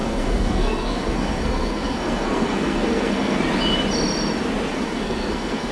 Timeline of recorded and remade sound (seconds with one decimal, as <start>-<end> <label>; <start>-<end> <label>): 0.0-3.4 remade; 3.4-4.7 recorded; 4.7-5.7 remade

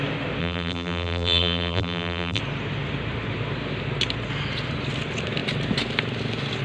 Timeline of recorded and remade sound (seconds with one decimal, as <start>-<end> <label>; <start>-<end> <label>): 0.0-0.4 recorded; 0.4-2.4 remade; 2.4-6.6 recorded